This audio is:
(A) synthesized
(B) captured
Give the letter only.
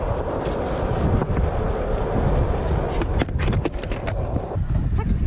B